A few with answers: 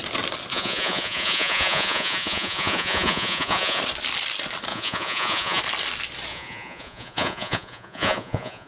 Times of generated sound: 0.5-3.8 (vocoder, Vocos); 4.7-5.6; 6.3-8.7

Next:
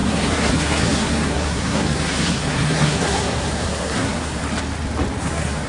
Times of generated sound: 0.0-4.4 (codec, SNAC); 5.2-5.7

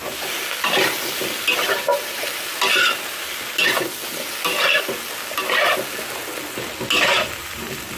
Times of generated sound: 0.0-1.9 (vocoder, BigVGAN v2); 6.6-8.0